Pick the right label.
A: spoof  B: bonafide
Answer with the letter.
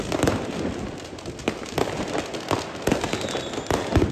B